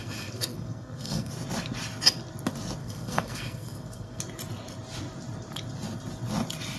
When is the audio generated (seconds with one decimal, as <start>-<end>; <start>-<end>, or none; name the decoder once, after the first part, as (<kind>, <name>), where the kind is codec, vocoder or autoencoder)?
0.0-1.3 (codec, SNAC); 2.8-4.2